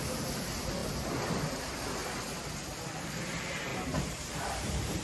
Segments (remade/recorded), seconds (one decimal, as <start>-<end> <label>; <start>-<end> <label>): 0.0-3.7 recorded; 3.7-5.0 remade